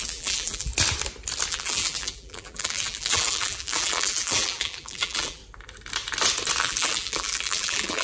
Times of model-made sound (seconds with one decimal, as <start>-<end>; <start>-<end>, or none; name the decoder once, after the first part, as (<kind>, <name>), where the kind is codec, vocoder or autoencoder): 0.0-0.7 (vocoder, BigVGAN v2); 1.5-5.4; 6.6-8.0